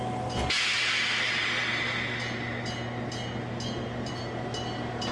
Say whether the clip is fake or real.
real